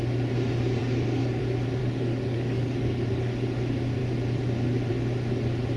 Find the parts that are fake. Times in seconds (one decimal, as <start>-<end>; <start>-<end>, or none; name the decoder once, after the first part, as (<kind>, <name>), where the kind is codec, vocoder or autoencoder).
0.8-1.4 (codec, DAC); 1.8-3.1